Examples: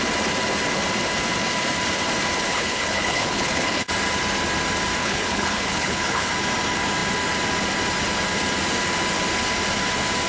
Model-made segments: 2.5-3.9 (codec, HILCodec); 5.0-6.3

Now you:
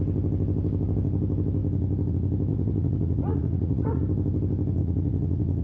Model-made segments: 2.5-4.0 (vocoder, Vocos); 4.8-5.6

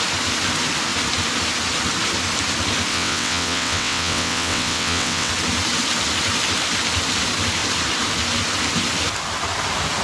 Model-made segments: 2.9-5.3 (vocoder, WaveNeXt)